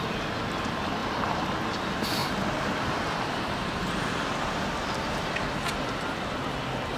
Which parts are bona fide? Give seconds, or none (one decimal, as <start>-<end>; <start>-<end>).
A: 0.0-1.0; 1.5-2.2; 6.4-7.0

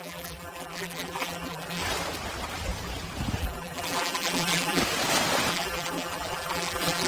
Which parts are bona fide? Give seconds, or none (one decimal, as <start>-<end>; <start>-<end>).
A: 1.8-3.4; 4.8-5.5